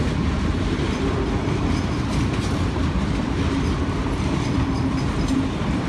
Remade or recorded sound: remade